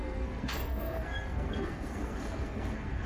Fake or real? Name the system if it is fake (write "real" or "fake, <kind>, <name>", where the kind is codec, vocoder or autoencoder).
fake, codec, SNAC